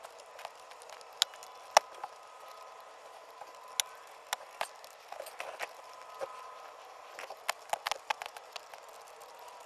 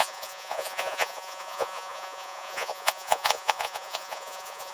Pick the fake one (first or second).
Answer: second